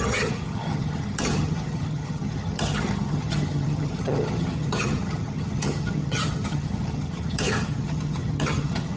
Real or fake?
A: fake